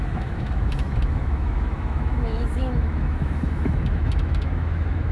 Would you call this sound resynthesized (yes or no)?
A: yes